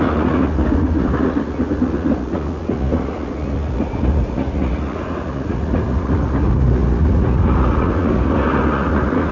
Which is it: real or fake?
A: fake